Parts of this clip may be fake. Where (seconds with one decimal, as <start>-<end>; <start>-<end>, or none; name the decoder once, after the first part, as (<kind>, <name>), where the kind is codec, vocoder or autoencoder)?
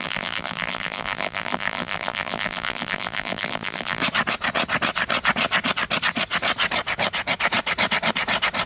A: 0.0-4.0 (vocoder, BigVGAN v2)